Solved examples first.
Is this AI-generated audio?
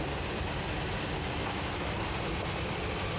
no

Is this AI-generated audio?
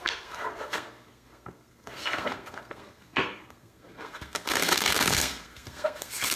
yes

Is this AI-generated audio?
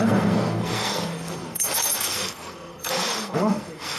yes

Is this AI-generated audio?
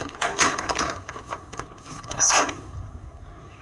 yes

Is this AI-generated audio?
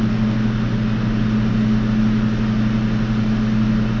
no